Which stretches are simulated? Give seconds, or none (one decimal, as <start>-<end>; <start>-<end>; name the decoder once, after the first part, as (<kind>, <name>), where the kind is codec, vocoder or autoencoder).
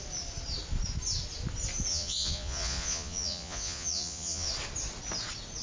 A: 1.9-4.5 (vocoder, Vocos)